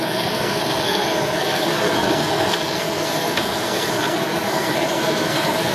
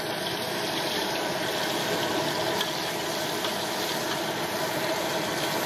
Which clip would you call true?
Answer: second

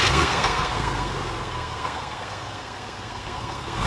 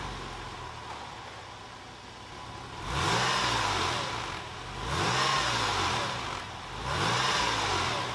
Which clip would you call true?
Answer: second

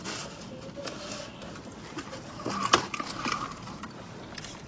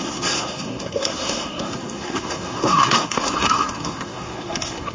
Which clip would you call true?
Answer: first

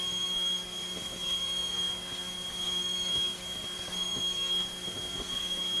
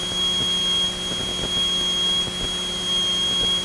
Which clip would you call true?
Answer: second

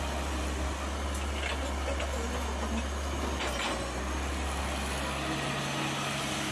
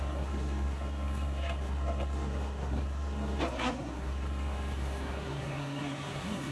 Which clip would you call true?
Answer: first